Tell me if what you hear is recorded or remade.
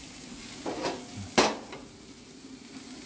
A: recorded